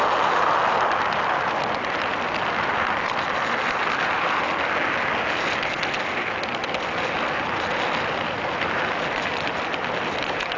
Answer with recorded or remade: recorded